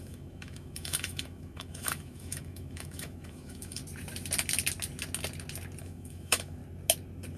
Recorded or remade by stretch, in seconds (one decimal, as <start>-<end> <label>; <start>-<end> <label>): 0.0-3.8 remade; 3.8-5.8 recorded; 5.8-6.6 remade; 6.6-7.4 recorded